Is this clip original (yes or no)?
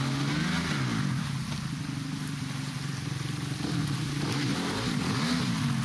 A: yes